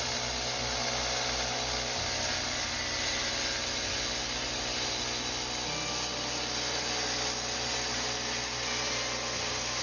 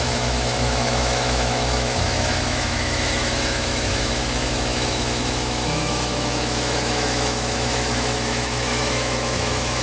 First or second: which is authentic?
first